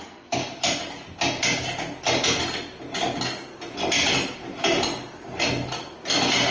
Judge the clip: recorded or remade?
recorded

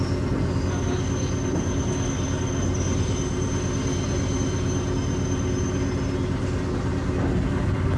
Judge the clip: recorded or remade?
recorded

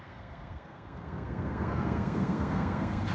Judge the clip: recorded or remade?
remade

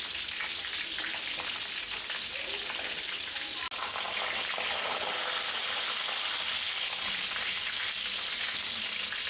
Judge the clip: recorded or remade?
recorded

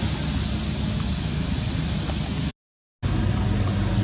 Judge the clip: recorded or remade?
recorded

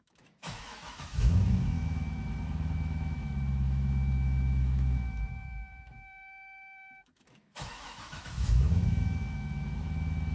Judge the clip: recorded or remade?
remade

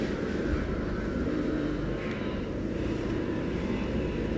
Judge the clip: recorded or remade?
remade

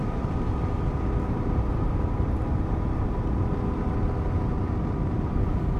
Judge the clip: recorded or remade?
recorded